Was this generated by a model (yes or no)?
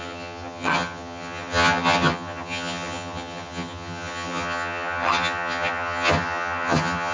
yes